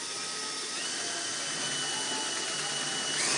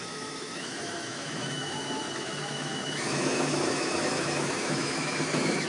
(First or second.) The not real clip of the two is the second